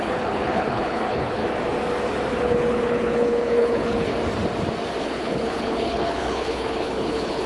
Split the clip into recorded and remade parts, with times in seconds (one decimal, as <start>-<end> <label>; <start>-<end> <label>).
0.0-1.4 remade; 1.4-2.4 recorded; 2.4-4.1 remade; 4.1-5.0 recorded; 5.0-7.5 remade